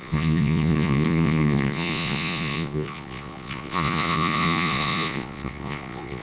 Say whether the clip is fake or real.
fake